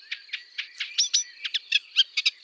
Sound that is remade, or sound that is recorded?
recorded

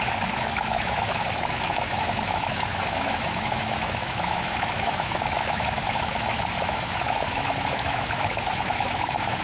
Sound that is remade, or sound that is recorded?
remade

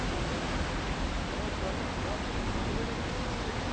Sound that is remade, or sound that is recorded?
recorded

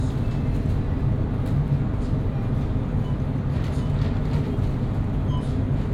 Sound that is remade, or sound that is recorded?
recorded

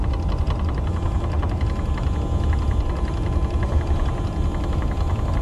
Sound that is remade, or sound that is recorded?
recorded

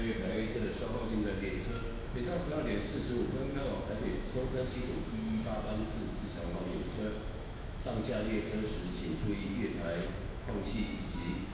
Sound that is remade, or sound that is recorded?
remade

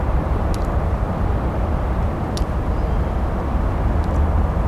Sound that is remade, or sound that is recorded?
recorded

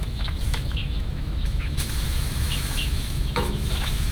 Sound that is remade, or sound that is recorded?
remade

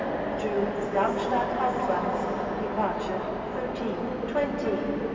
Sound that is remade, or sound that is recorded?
recorded